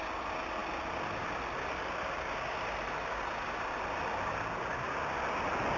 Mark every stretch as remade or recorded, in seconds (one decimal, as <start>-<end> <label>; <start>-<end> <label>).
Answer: 0.0-5.8 recorded